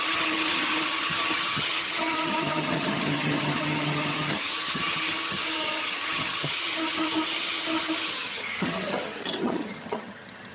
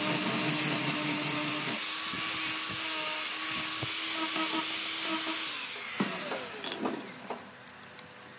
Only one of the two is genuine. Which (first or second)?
second